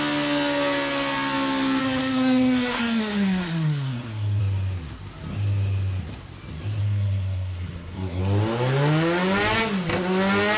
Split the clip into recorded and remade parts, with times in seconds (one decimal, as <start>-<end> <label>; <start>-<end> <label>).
0.0-1.8 recorded; 1.8-4.4 remade; 4.4-6.8 recorded; 6.8-8.2 remade; 8.2-10.6 recorded